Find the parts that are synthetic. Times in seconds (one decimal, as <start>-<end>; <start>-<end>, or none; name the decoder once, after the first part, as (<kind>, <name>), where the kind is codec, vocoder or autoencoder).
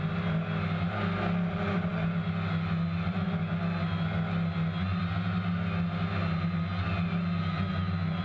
none